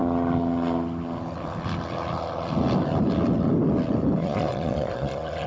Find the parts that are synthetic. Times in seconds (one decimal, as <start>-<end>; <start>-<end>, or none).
4.2-5.5